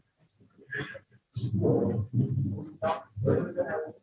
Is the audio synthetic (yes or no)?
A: no